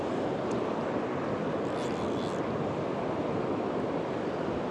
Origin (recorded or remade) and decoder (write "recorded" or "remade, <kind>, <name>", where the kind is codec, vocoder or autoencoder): recorded